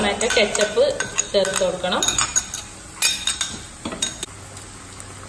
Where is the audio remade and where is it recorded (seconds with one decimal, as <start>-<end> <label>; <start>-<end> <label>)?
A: 0.0-5.3 recorded